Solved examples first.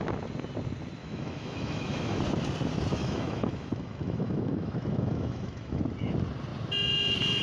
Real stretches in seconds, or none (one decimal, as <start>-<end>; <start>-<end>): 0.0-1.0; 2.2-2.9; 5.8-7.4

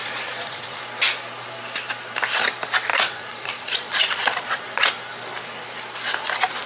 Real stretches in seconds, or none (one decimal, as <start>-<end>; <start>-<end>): 0.8-2.9; 4.9-6.7

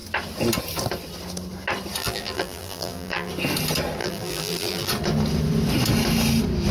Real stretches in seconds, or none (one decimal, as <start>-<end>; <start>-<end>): 0.0-2.0; 3.3-4.0; 4.9-6.7

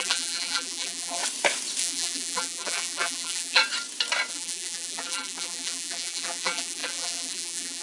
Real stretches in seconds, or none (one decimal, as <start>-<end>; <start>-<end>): 1.2-1.8; 3.6-4.3

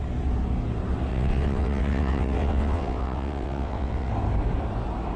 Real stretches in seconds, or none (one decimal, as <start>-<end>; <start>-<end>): 0.0-1.1; 4.1-5.2